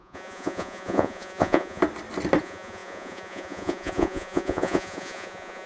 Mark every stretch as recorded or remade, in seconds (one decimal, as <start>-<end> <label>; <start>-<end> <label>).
0.0-1.8 remade; 1.8-2.4 recorded; 2.4-5.7 remade